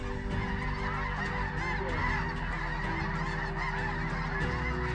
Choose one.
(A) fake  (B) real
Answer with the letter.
B